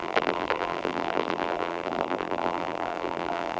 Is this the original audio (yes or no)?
no